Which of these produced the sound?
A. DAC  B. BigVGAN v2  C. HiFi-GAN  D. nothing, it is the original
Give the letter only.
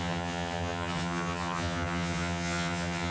C